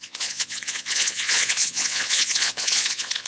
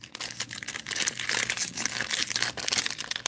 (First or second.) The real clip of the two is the second